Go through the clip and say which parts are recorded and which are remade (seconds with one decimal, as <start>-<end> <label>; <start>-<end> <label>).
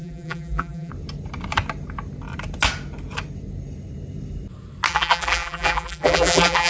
0.0-0.9 remade; 0.9-4.9 recorded; 4.9-6.7 remade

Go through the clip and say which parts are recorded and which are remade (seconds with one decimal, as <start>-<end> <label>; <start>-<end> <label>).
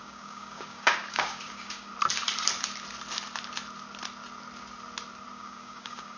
0.0-1.9 remade; 1.9-5.3 recorded; 5.3-6.2 remade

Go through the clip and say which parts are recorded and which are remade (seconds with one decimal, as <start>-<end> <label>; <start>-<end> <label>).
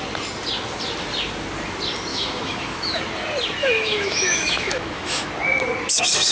0.0-2.1 recorded; 2.1-3.0 remade; 3.0-3.6 recorded; 3.6-5.3 remade; 5.3-6.3 recorded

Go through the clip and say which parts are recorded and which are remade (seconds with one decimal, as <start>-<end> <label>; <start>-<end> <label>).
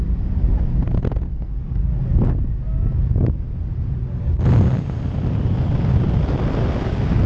0.0-1.3 recorded; 1.3-1.9 remade; 1.9-7.3 recorded